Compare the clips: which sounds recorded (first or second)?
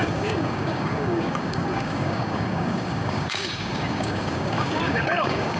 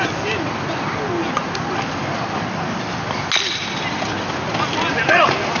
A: second